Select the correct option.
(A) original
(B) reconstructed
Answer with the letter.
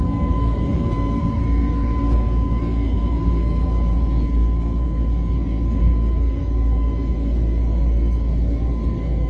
B